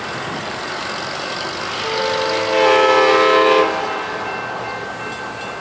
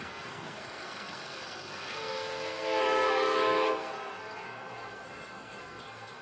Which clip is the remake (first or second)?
second